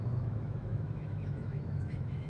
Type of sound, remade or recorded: remade